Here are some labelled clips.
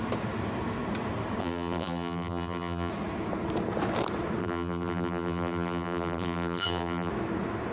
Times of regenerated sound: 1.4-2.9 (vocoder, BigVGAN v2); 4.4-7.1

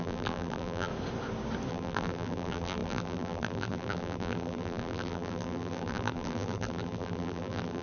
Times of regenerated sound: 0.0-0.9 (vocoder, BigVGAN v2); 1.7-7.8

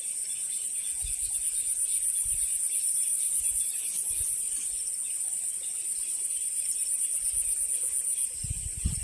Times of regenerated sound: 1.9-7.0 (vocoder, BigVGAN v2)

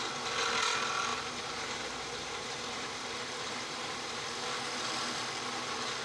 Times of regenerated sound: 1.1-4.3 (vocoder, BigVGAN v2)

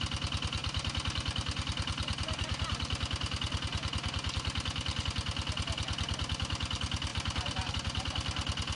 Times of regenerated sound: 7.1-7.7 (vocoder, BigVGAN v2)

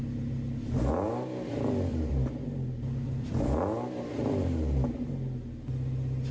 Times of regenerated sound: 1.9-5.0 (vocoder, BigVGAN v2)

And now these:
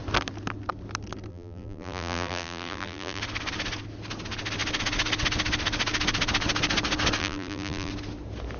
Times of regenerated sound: 1.3-3.2 (vocoder, BigVGAN v2); 7.2-7.9

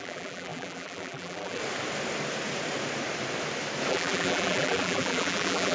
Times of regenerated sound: 0.0-1.6 (vocoder, BigVGAN v2); 3.9-5.7